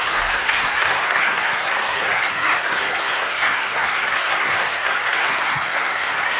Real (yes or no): no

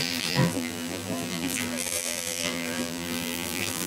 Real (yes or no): no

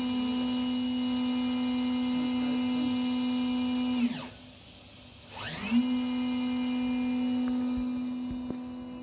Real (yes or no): yes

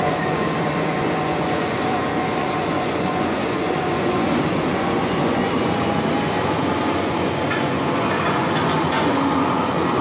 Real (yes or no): no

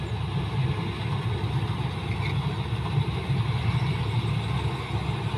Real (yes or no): yes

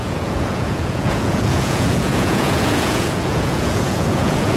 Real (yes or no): no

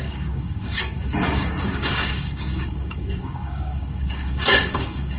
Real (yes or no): no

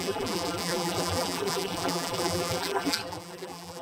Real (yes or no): no